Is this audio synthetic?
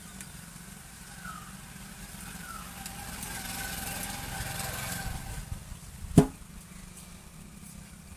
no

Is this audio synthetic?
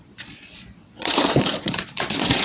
yes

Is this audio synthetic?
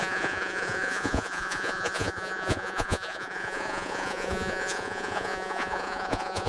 yes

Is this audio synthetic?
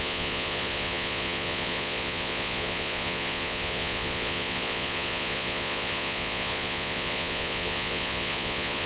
yes